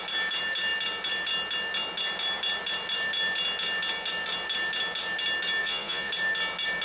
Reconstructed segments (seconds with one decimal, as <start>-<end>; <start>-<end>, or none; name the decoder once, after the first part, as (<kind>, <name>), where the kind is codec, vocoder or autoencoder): 5.6-6.1 (vocoder, Vocos)